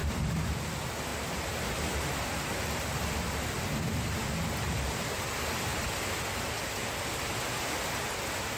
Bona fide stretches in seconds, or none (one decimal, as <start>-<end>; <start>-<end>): 0.7-1.1; 5.2-8.6